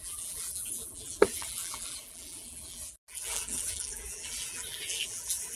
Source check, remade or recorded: remade